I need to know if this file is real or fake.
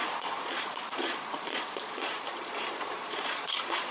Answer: fake